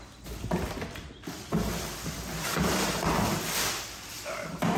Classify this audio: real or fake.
real